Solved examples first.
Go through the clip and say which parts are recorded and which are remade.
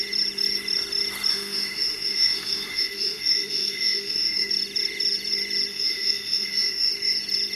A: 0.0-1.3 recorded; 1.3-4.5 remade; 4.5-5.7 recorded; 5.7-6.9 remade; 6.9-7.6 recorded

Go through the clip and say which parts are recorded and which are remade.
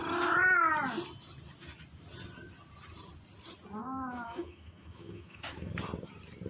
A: 0.0-3.8 recorded; 3.8-5.7 remade; 5.7-6.5 recorded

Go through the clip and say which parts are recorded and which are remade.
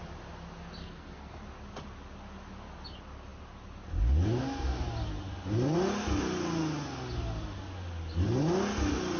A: 0.0-0.8 recorded; 0.8-1.4 remade; 1.4-9.2 recorded